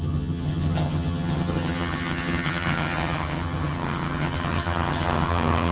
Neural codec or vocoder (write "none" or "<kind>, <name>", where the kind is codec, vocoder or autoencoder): vocoder, HiFi-GAN